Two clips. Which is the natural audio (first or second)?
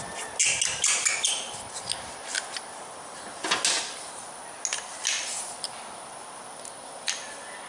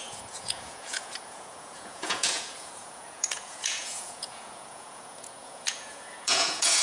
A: first